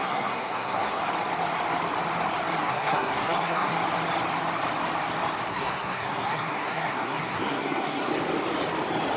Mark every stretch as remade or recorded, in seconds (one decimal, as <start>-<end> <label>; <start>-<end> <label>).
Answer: 0.0-1.0 remade; 1.0-2.6 recorded; 2.6-3.7 remade; 3.7-5.5 recorded; 5.5-8.1 remade; 8.1-9.2 recorded